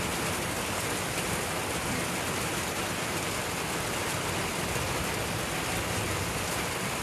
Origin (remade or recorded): recorded